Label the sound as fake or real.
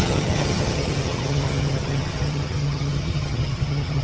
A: fake